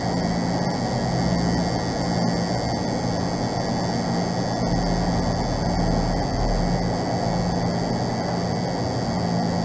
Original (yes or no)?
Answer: yes